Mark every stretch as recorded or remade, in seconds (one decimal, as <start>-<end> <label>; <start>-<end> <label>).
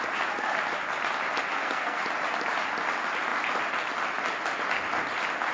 0.0-1.5 recorded; 1.5-2.0 remade; 2.0-5.5 recorded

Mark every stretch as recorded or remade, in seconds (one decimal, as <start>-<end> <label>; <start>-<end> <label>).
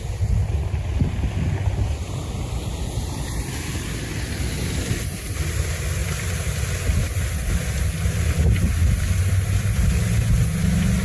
0.0-11.0 recorded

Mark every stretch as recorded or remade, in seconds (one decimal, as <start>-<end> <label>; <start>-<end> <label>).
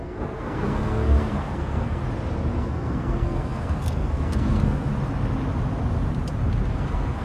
0.0-2.0 remade; 2.0-2.5 recorded; 2.5-4.9 remade; 4.9-6.7 recorded; 6.7-7.2 remade